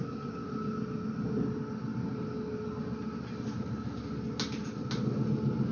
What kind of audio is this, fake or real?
real